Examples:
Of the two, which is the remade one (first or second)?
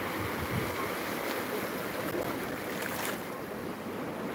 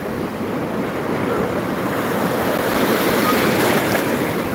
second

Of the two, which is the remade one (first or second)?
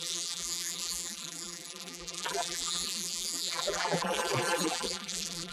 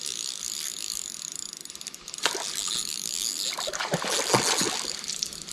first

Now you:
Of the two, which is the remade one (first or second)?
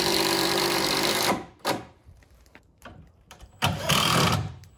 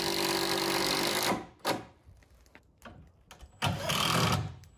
first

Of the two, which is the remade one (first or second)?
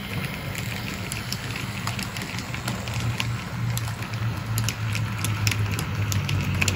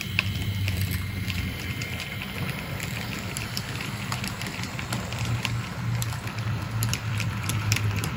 second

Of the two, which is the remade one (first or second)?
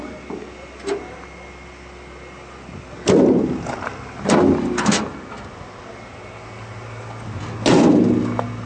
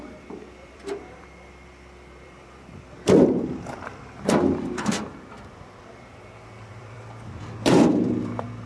second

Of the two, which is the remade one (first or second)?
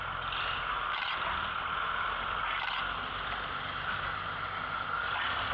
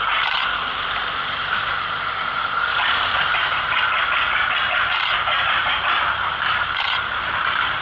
second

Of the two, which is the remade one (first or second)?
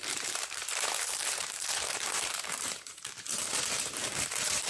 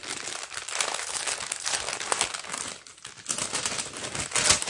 first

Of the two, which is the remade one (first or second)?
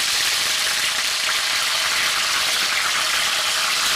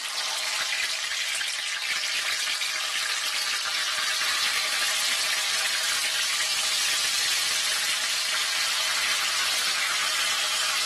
first